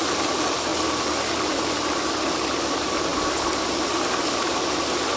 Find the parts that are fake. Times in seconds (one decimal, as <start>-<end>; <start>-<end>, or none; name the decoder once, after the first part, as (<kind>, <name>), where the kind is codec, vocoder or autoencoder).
none